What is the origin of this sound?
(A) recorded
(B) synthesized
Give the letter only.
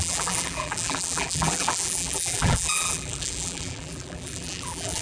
B